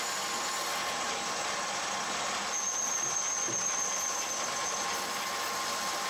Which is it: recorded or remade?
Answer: recorded